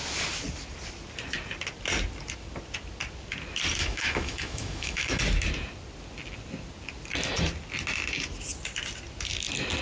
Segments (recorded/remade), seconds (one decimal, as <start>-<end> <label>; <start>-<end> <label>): 0.0-3.8 recorded; 3.8-5.2 remade; 5.2-9.8 recorded